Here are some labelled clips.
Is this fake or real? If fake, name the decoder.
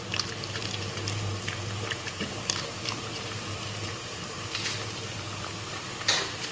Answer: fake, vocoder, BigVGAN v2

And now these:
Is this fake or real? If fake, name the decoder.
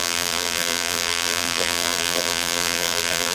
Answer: fake, vocoder, BigVGAN v2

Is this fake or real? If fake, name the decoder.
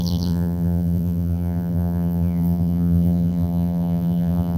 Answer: fake, vocoder, BigVGAN v2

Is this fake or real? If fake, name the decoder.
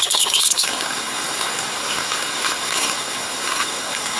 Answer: fake, codec, SNAC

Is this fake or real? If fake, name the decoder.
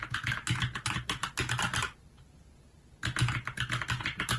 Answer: real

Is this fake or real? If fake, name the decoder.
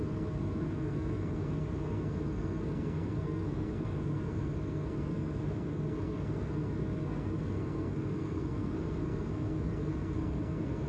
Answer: fake, codec, SNAC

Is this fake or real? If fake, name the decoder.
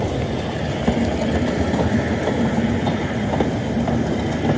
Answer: real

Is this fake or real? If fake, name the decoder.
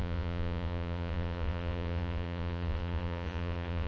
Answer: fake, vocoder, Vocos